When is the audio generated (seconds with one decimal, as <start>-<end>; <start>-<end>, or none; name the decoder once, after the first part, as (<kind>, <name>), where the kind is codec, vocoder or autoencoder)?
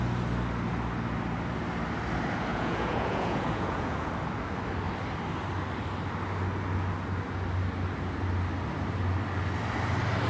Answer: 2.5-4.1 (vocoder, Vocos)